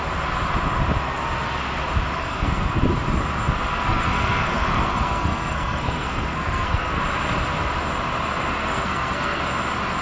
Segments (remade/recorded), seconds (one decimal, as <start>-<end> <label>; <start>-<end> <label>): 0.0-2.2 recorded; 2.2-2.8 remade; 2.8-3.7 recorded; 3.7-7.0 remade; 7.0-8.6 recorded; 8.6-9.4 remade; 9.4-10.0 recorded